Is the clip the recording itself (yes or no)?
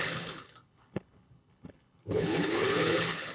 no